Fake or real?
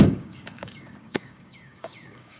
fake